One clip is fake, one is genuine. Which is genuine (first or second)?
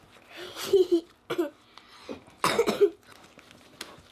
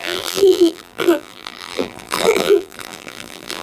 first